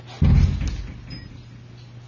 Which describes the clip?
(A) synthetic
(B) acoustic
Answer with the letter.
B